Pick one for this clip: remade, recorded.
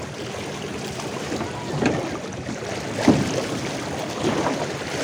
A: recorded